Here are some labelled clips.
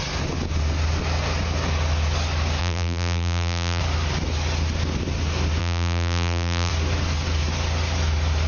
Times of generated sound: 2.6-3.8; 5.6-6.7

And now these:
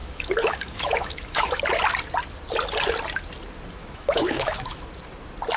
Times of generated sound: 0.0-1.6; 3.8-4.8

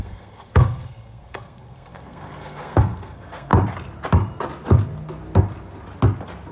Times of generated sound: 0.0-3.5

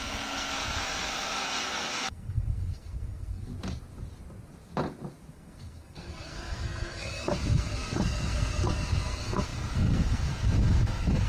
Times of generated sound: 0.0-3.5; 5.3-11.3

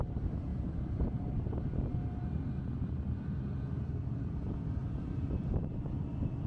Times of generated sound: 0.5-1.4; 4.8-5.8

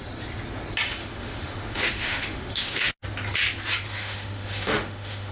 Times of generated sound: 1.0-2.9; 3.9-5.3

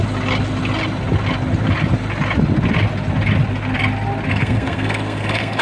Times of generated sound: 4.3-5.6

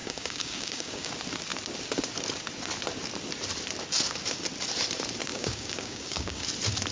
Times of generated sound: 0.0-1.1; 5.3-6.4